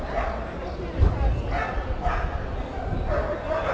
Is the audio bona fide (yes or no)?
yes